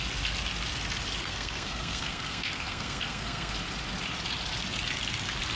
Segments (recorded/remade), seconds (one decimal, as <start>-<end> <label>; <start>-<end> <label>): 0.0-1.2 recorded; 1.2-3.5 remade; 3.5-5.6 recorded